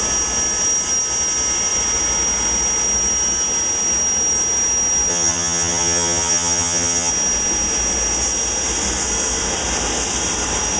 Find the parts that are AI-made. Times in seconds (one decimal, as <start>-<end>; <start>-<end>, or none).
5.1-7.1